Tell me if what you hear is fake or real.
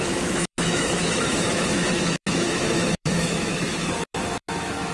fake